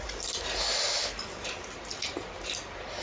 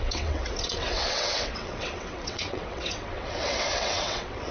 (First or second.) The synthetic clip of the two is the second